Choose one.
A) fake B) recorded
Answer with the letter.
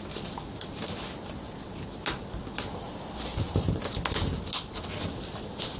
B